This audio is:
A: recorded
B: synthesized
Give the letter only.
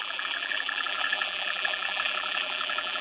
B